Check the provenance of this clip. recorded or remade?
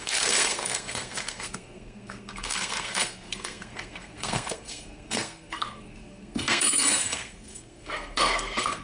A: remade